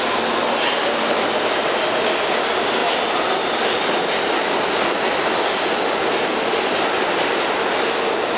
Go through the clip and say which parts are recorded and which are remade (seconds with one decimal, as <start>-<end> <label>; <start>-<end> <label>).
0.0-8.4 recorded

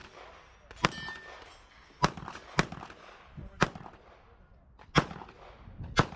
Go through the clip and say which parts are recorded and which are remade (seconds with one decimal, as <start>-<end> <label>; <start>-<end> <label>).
0.0-6.2 recorded